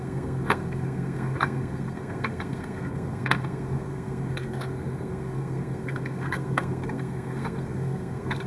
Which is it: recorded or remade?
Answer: remade